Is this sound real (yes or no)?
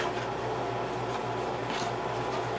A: yes